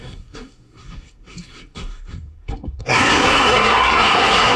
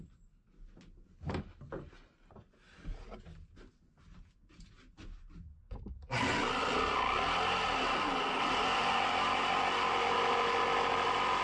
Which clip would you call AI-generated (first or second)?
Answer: first